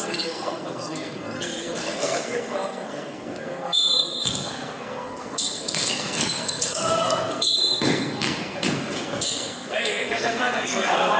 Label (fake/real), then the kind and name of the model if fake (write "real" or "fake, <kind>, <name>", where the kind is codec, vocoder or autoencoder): fake, codec, SNAC